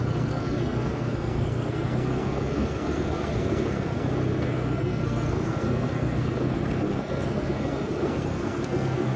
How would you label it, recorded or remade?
remade